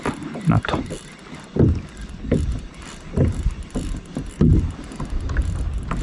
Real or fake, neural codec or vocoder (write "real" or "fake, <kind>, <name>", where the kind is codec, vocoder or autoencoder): real